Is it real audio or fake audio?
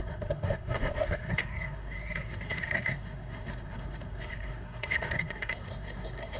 fake